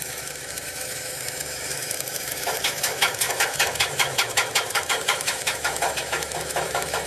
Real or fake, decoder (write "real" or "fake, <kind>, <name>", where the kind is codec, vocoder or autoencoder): fake, autoencoder, DAC-VAE